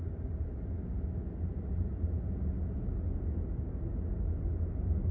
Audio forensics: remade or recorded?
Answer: recorded